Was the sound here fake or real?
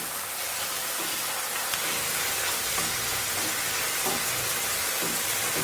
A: fake